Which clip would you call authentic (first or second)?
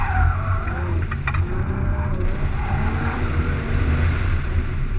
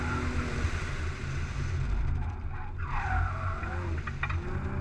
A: second